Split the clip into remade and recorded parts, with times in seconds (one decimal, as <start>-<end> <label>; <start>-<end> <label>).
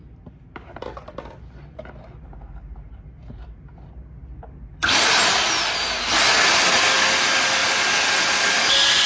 0.0-9.1 recorded